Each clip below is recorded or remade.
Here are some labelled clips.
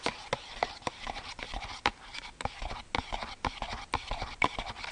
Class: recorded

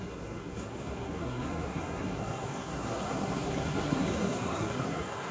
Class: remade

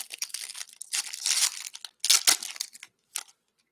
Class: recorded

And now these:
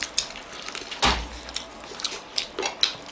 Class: recorded